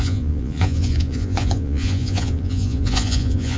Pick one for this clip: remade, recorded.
remade